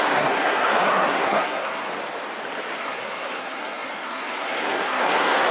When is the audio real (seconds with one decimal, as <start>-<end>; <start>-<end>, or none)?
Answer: 1.9-2.8